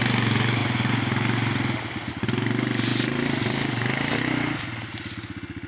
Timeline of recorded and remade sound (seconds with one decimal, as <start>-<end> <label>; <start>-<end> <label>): 0.0-2.9 recorded; 2.9-4.2 remade; 4.2-5.7 recorded